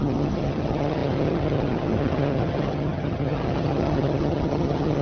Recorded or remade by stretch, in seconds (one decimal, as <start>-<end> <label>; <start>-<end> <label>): 0.0-5.0 remade